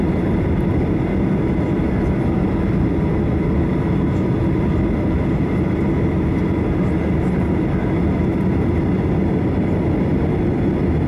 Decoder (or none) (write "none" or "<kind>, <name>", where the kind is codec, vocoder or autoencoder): none